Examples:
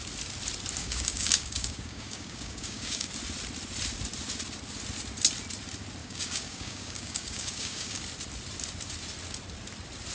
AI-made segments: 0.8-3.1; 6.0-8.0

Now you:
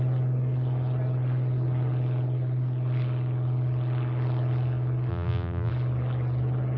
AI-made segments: 5.1-5.7

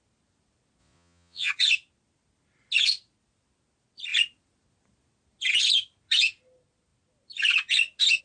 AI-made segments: 0.8-1.5

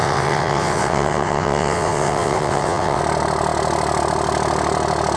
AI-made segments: 0.0-3.0

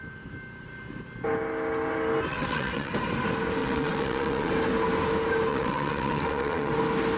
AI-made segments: 2.3-2.9; 3.6-4.5; 5.5-6.7

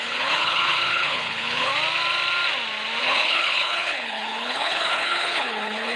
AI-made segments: 0.0-1.7; 3.0-6.0

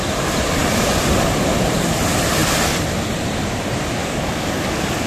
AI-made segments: 4.0-5.1